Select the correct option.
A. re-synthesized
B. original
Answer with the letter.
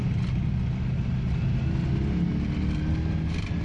B